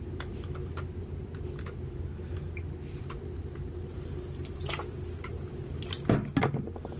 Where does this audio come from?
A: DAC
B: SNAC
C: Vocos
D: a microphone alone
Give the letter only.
D